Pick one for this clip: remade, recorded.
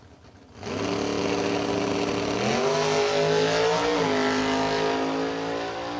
recorded